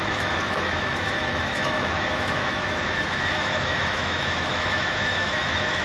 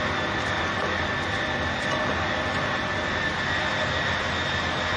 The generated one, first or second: first